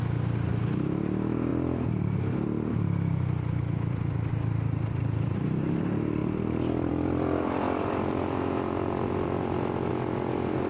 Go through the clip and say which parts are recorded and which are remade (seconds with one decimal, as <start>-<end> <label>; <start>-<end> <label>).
0.0-1.5 recorded; 1.5-5.8 remade; 5.8-6.2 recorded; 6.2-9.9 remade; 9.9-10.7 recorded